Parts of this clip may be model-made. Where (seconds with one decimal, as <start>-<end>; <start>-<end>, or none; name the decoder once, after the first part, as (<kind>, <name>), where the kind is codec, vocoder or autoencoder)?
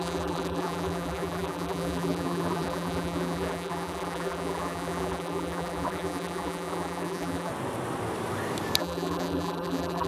0.0-7.5 (vocoder, BigVGAN v2); 8.8-10.1